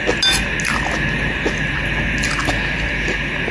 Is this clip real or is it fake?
real